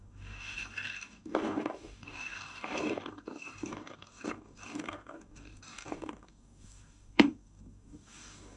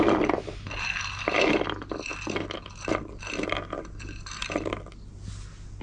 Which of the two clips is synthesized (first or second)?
first